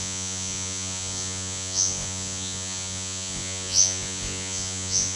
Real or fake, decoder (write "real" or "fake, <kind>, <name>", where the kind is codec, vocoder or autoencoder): fake, vocoder, Vocos